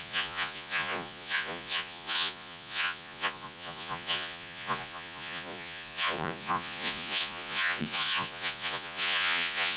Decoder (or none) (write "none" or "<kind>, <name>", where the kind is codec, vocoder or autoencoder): vocoder, Vocos